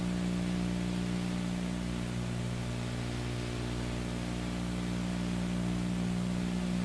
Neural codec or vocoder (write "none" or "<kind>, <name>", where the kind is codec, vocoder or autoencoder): none